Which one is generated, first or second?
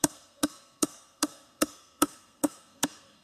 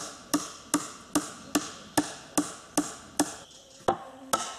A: first